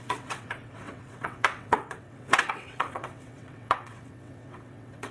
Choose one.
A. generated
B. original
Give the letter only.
A